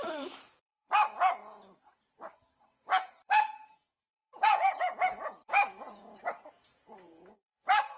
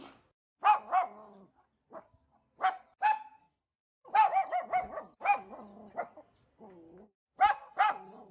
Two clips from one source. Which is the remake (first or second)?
first